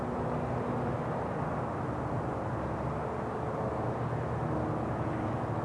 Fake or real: real